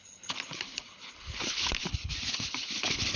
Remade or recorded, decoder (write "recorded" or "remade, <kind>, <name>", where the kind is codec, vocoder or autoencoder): remade, codec, HILCodec